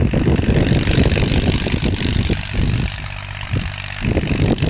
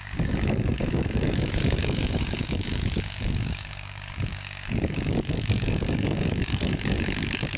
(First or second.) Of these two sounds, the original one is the first